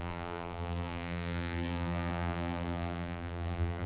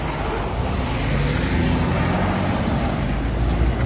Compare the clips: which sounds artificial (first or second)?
first